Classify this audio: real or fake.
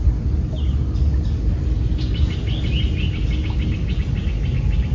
real